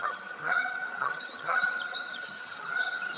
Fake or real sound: fake